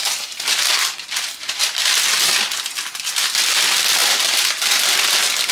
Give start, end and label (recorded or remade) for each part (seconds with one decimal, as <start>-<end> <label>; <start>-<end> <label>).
0.0-5.5 recorded